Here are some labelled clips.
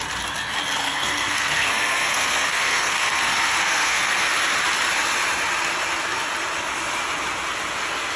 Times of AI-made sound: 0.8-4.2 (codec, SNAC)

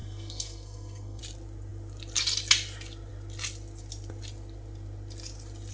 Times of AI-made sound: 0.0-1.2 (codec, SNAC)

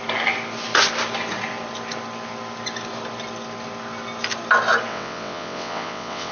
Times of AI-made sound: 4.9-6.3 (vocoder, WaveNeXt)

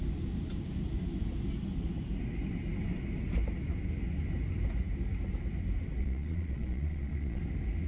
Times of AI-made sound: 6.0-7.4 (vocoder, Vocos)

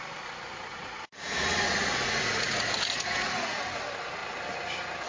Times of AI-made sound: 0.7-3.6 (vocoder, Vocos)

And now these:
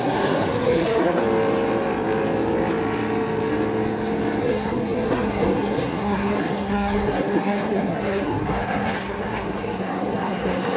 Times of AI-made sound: 0.0-1.2 (codec, SNAC); 4.4-10.8

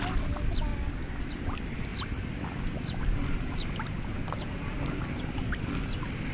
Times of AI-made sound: none